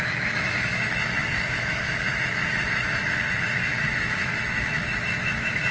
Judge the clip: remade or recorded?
remade